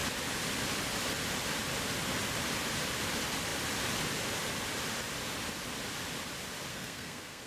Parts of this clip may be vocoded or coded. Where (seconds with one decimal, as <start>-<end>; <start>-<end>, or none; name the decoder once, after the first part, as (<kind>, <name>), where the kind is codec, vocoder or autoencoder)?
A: 6.7-7.5 (codec, SNAC)